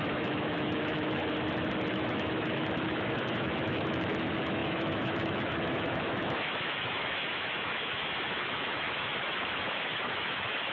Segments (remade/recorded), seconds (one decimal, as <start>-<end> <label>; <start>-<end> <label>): 0.0-1.2 remade; 1.2-1.9 recorded; 1.9-10.7 remade